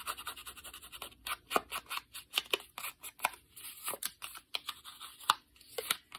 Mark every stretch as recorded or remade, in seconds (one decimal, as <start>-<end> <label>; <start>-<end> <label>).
0.0-6.2 recorded